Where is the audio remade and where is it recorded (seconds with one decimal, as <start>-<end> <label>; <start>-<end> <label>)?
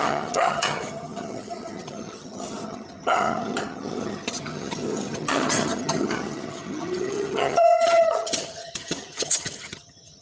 0.0-10.2 remade